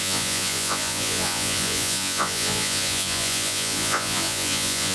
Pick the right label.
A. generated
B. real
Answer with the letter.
A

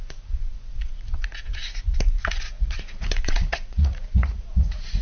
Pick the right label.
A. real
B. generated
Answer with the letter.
B